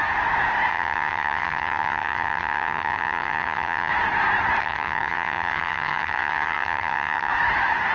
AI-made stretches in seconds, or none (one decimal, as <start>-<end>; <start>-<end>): 0.7-3.9; 4.6-7.3

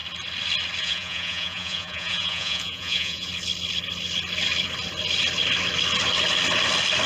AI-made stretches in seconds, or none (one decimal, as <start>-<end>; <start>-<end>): 0.8-3.3

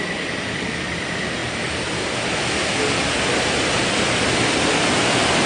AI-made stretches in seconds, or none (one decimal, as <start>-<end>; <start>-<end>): none

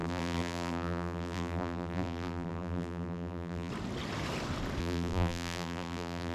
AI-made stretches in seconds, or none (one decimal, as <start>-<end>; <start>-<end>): 0.0-3.7; 4.8-6.3